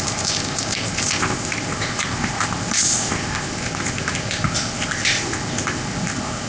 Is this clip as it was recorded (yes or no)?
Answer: no